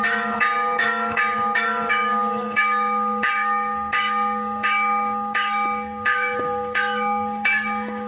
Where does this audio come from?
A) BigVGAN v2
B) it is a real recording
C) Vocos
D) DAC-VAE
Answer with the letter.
D